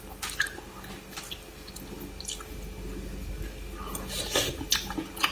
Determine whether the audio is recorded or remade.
recorded